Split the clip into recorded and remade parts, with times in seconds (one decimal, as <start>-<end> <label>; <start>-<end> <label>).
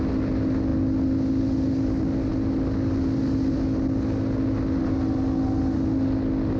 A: 0.0-6.6 recorded